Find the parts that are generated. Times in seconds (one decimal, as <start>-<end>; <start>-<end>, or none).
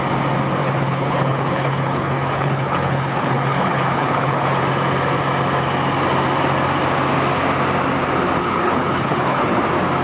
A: 0.6-4.6; 8.4-9.6